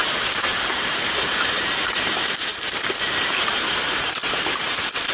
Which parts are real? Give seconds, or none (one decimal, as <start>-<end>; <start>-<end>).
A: 2.5-3.2; 4.2-5.1